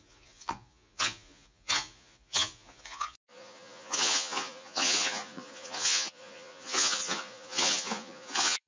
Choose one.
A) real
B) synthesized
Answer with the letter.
B